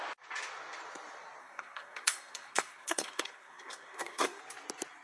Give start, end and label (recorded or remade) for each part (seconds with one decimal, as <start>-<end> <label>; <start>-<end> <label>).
0.0-1.4 recorded; 1.4-4.4 remade; 4.4-5.0 recorded